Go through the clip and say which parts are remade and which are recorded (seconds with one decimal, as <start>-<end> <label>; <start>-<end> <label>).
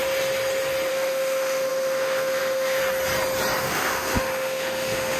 0.0-0.9 recorded; 0.9-2.8 remade; 2.8-3.6 recorded; 3.6-5.2 remade